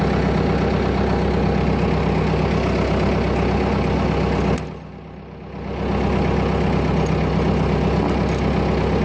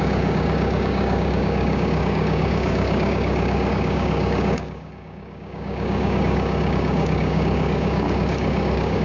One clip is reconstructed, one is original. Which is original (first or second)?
first